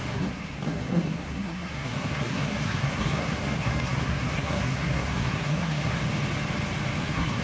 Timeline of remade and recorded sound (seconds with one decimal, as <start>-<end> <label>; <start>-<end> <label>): 0.0-6.0 remade; 6.0-7.0 recorded; 7.0-7.4 remade